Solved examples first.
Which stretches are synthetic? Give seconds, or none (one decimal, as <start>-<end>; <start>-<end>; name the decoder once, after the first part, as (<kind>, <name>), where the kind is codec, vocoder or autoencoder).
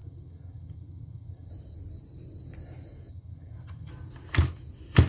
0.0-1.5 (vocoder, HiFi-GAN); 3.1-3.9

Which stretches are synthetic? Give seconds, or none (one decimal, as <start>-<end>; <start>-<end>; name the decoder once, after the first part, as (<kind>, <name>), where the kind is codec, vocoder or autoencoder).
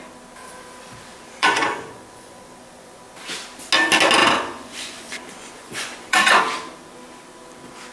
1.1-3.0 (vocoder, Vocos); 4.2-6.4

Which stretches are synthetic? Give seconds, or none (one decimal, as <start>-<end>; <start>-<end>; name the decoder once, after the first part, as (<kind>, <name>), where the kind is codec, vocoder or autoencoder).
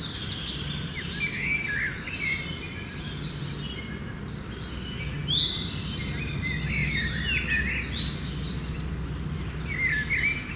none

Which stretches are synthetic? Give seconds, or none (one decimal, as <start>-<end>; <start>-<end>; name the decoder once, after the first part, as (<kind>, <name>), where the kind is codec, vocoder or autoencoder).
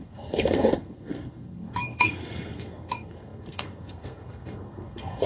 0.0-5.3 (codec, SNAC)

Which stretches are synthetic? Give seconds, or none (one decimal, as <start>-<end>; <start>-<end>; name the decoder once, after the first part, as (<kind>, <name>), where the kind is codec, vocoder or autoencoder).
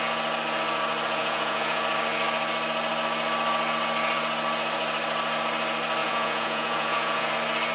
1.2-1.8 (vocoder, Vocos); 6.0-7.3